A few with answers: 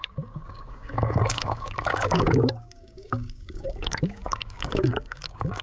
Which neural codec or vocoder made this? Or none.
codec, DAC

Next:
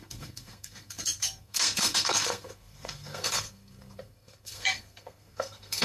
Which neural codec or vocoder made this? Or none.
codec, SNAC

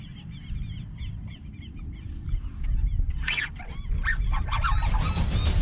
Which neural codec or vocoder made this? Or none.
vocoder, BigVGAN v2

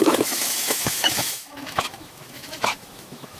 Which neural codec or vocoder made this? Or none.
autoencoder, DAC-VAE